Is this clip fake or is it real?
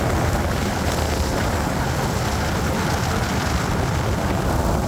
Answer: real